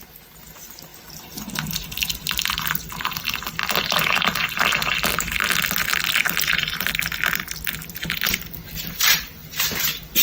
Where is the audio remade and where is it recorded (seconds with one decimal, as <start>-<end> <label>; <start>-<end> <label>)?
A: 0.0-0.9 recorded; 0.9-2.9 remade; 2.9-5.8 recorded; 5.8-6.9 remade; 6.9-10.2 recorded